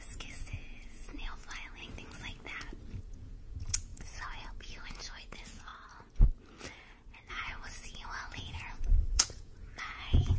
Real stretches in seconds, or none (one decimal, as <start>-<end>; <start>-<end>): 1.8-3.0; 5.7-7.3